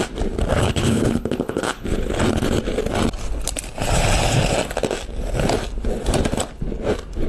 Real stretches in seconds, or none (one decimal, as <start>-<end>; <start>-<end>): 0.0-0.5; 2.2-7.3